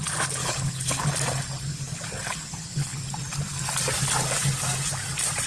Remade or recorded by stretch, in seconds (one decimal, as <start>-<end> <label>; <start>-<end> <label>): 0.0-0.4 recorded; 0.4-1.1 remade; 1.1-1.7 recorded; 1.7-3.0 remade; 3.0-5.5 recorded